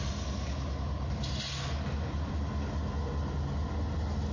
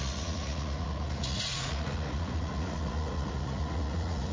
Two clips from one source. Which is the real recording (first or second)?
first